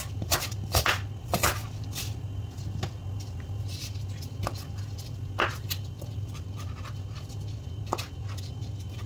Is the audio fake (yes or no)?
no